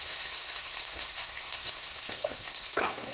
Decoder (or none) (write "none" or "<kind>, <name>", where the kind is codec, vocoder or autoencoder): codec, SNAC